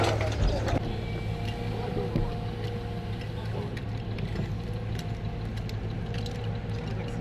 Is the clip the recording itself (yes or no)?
yes